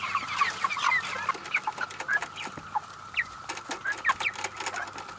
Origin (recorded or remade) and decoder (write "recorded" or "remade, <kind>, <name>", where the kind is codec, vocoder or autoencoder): recorded